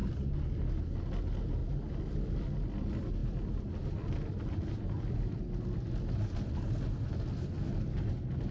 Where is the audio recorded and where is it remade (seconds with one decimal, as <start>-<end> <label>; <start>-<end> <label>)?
0.0-8.5 recorded